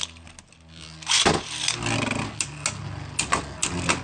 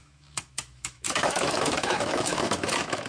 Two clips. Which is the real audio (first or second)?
first